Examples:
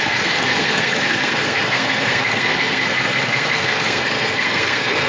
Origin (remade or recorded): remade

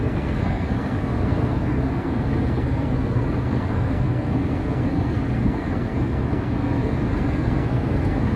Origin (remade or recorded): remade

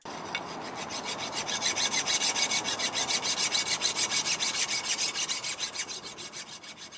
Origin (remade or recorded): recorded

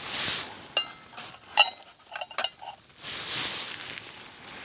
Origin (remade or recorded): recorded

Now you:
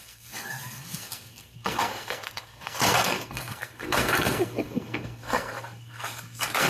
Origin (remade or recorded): remade